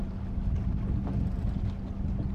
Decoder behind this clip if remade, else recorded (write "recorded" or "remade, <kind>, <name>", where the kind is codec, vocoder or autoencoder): recorded